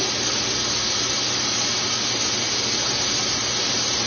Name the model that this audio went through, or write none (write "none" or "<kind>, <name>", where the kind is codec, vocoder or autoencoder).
none